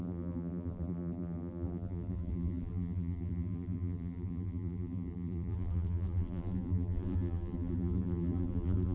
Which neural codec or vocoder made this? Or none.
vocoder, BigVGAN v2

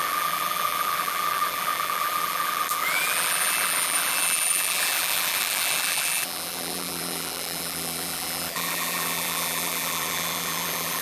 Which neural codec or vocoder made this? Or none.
vocoder, BigVGAN v2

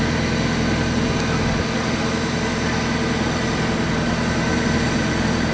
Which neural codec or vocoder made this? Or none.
none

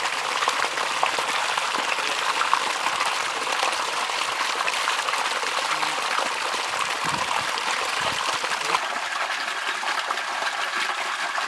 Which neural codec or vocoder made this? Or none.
vocoder, BigVGAN v2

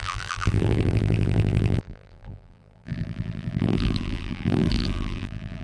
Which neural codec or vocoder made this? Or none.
vocoder, BigVGAN v2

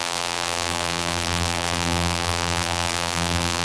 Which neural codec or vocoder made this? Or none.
vocoder, BigVGAN v2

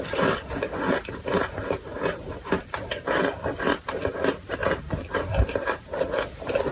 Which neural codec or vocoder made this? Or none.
vocoder, BigVGAN v2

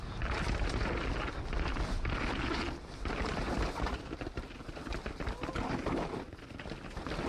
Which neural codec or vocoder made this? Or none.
none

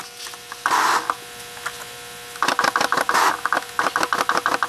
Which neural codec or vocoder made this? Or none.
none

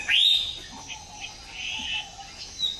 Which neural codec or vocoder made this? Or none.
none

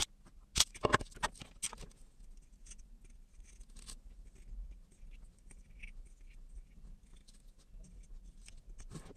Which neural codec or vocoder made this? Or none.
none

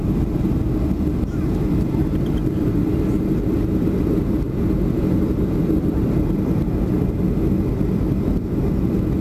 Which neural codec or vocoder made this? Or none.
none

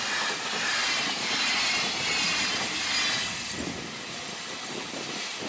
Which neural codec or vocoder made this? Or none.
none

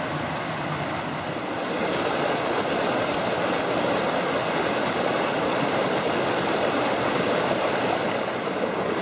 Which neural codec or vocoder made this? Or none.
none